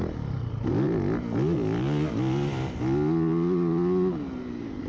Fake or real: real